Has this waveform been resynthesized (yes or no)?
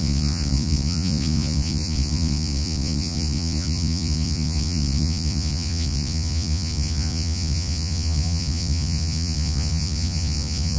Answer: yes